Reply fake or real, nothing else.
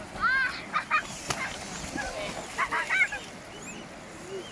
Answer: real